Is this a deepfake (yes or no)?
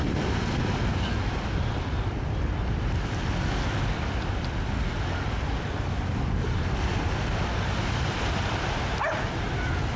no